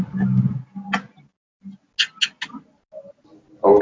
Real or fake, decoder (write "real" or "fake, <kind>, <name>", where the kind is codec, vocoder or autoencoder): real